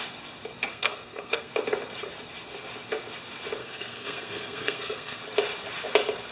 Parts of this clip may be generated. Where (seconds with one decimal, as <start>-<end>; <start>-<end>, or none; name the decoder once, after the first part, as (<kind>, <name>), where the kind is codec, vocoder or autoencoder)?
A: 0.7-1.5 (codec, SNAC); 3.6-5.2